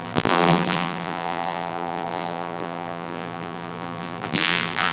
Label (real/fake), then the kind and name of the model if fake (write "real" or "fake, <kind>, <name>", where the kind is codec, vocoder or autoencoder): fake, vocoder, BigVGAN v2